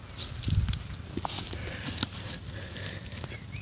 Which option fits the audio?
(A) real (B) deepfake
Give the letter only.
A